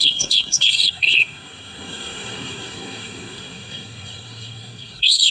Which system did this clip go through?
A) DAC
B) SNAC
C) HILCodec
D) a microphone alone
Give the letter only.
B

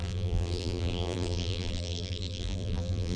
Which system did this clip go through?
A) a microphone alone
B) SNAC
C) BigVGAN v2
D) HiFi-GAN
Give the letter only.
C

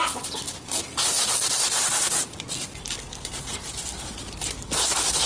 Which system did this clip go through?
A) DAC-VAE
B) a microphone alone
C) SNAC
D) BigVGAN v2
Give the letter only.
B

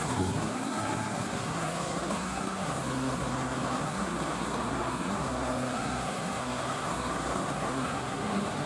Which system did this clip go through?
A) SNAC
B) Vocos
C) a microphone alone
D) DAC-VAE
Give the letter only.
A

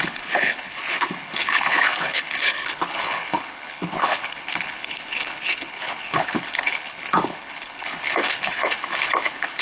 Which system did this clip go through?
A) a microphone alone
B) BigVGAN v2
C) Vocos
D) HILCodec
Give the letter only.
D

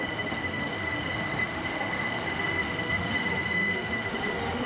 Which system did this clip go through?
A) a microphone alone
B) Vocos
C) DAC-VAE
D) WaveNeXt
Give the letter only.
C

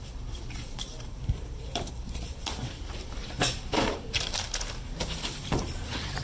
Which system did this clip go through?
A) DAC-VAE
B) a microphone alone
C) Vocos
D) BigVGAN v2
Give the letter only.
D